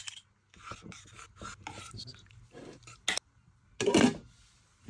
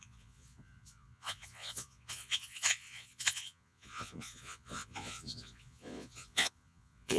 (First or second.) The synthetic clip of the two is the second